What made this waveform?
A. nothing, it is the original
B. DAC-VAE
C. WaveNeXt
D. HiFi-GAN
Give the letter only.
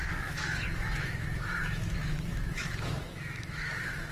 B